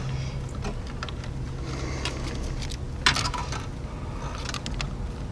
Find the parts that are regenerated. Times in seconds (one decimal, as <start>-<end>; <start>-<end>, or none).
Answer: none